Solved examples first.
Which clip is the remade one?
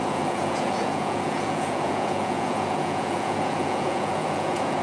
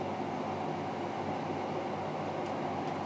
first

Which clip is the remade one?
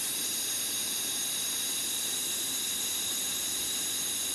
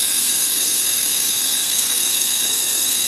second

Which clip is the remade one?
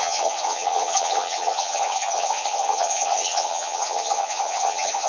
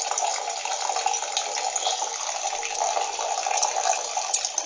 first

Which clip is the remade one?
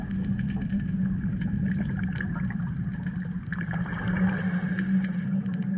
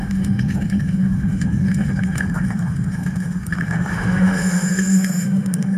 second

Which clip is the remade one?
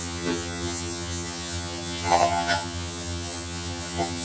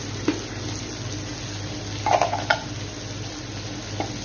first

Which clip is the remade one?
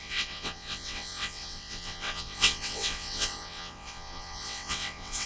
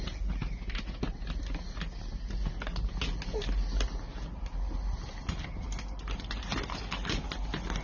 first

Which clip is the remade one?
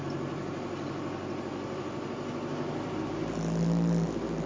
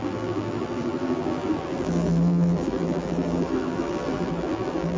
second